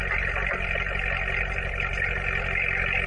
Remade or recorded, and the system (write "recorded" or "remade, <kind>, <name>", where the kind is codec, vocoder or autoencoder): recorded